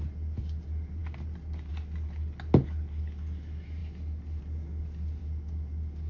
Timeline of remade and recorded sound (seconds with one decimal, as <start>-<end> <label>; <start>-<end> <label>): 0.0-6.1 recorded